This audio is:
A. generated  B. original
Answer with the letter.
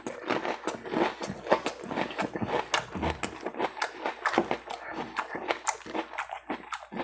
B